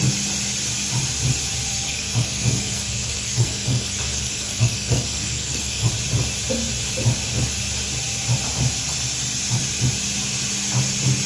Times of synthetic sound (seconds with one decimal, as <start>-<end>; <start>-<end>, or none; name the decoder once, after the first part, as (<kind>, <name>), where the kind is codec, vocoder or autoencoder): 1.7-5.9 (codec, SNAC)